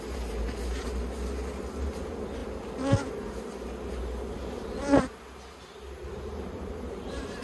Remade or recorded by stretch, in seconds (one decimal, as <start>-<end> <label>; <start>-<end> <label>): 0.0-7.4 recorded